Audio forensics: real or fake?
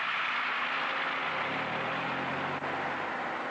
real